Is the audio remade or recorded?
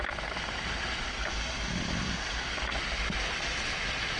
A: recorded